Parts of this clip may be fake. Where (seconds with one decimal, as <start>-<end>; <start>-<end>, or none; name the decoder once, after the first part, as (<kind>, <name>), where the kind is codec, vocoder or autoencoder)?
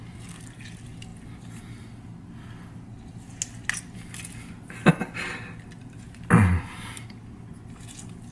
none